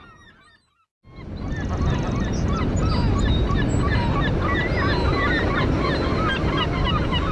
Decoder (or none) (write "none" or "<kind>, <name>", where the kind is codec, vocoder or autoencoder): none